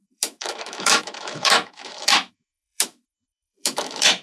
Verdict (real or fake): fake